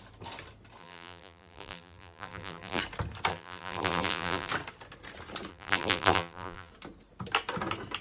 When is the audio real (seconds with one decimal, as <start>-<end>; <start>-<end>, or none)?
0.0-0.8; 2.8-3.3; 4.5-5.5; 6.7-8.0